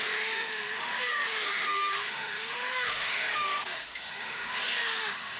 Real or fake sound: fake